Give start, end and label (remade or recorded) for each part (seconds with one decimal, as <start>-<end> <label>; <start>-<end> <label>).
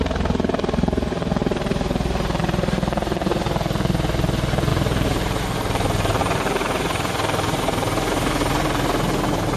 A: 0.0-1.4 recorded; 1.4-2.4 remade; 2.4-4.7 recorded; 4.7-6.2 remade; 6.2-9.6 recorded